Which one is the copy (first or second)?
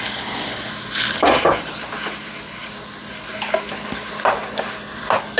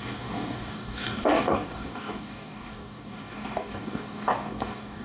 second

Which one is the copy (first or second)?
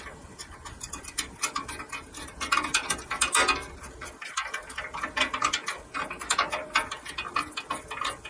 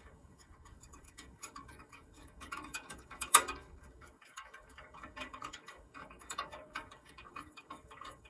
second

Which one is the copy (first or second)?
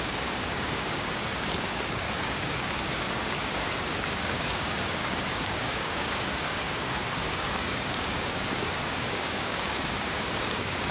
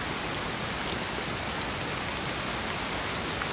first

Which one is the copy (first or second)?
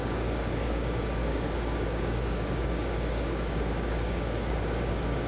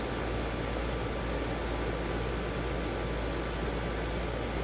first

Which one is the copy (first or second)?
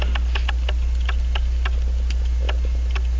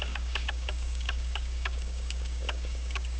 second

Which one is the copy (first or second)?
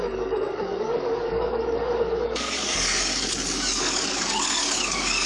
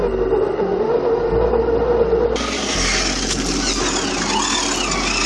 first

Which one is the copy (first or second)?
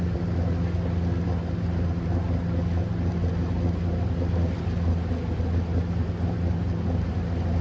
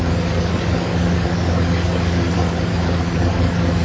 second